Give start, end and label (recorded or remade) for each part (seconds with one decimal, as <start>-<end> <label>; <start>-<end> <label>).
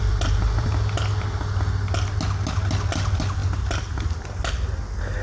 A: 0.0-5.2 recorded